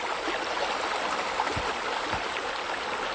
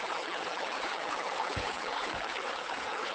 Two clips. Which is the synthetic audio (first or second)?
second